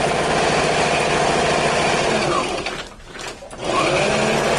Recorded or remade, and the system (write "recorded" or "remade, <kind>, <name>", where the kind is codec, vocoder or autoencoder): recorded